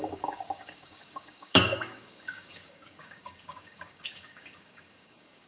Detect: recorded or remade remade